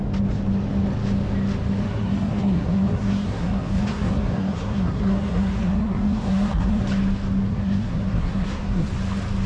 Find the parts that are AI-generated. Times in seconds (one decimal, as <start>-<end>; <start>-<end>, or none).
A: 1.8-6.8; 7.5-8.9